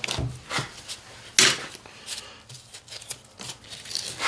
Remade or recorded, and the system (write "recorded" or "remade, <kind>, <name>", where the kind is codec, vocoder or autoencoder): recorded